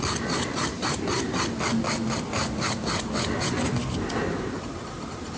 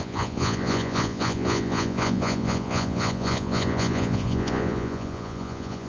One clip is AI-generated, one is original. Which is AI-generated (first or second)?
second